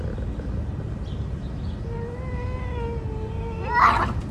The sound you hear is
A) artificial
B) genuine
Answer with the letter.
B